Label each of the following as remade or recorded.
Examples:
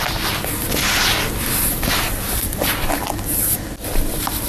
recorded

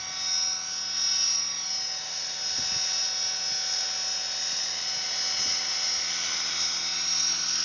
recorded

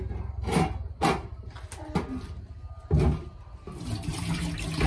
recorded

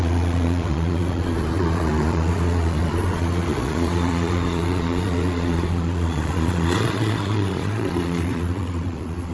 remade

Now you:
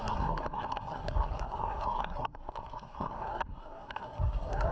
remade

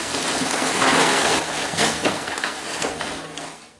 remade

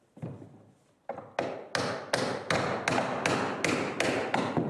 recorded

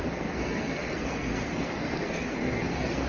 remade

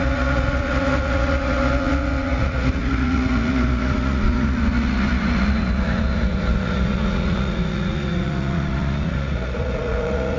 remade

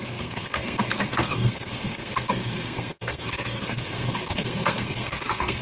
remade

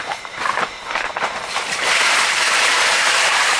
remade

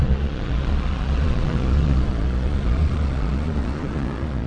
remade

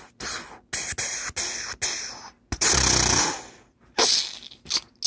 recorded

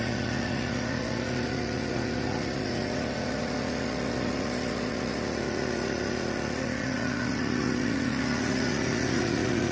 remade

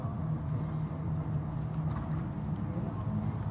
recorded